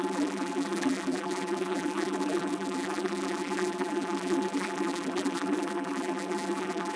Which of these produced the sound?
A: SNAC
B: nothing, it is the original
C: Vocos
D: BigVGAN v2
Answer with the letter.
D